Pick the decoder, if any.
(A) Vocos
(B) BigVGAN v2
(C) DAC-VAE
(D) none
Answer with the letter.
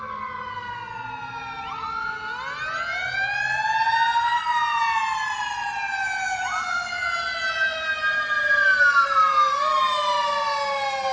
D